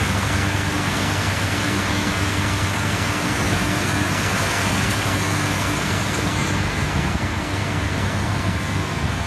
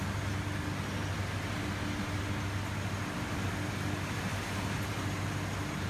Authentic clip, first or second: second